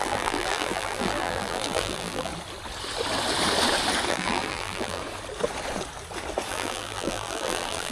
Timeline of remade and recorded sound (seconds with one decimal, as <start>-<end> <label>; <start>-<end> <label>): 0.0-2.3 remade; 2.3-4.1 recorded; 4.1-5.0 remade; 5.0-6.5 recorded; 6.5-7.9 remade